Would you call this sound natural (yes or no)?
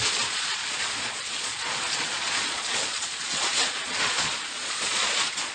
no